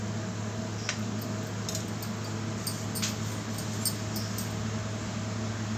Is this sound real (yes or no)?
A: yes